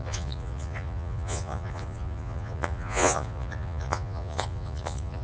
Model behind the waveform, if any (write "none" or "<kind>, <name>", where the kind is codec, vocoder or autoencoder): vocoder, Vocos